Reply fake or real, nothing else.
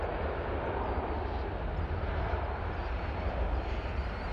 real